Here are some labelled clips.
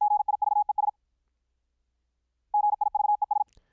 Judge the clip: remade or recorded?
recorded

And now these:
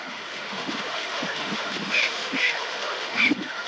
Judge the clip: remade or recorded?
remade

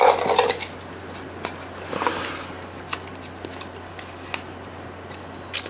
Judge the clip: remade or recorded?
recorded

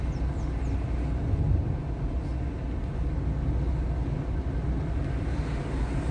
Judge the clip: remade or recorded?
recorded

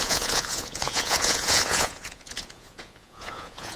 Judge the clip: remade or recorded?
remade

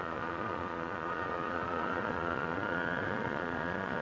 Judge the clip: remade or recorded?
remade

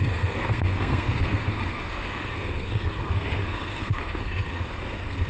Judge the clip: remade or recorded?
remade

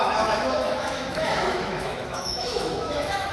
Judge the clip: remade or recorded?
remade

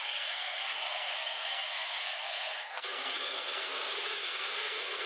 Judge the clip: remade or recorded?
remade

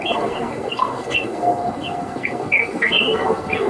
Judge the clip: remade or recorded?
remade